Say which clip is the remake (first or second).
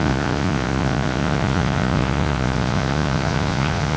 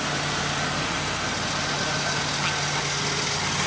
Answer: first